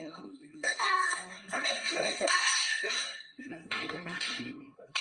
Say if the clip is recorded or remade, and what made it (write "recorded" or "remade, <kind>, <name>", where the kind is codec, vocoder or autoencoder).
remade, codec, SNAC